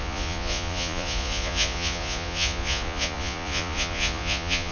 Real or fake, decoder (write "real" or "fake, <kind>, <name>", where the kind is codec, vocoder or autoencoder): fake, vocoder, Vocos